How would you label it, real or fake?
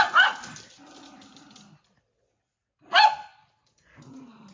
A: real